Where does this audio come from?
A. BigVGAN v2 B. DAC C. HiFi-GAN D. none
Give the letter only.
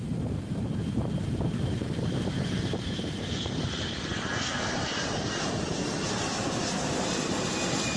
A